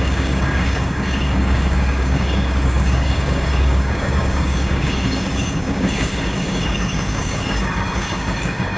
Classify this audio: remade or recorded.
remade